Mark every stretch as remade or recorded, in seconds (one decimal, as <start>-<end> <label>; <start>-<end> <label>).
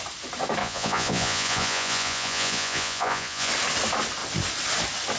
0.0-0.6 recorded; 0.6-3.5 remade; 3.5-5.2 recorded